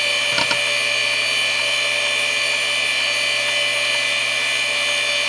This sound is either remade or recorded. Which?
recorded